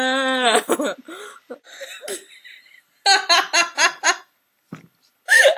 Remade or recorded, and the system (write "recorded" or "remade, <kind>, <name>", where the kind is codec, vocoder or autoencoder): recorded